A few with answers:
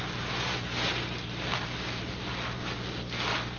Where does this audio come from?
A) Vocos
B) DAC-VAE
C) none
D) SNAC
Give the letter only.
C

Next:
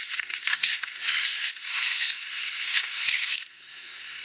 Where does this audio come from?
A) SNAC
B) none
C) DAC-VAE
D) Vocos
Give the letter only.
A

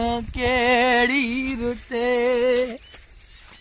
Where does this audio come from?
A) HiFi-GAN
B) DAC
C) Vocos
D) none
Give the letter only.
D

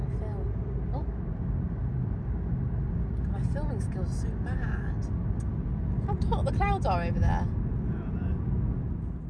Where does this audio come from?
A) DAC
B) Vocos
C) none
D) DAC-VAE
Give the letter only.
C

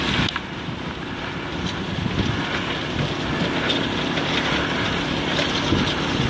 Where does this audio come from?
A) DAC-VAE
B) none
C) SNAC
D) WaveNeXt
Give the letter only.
B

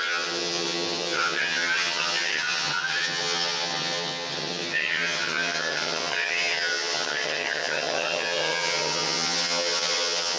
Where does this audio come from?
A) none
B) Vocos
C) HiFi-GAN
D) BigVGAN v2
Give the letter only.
C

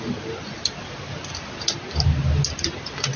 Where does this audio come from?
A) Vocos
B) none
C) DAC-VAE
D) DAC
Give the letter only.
B